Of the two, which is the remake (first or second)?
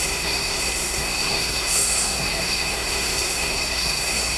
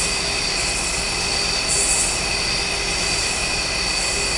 first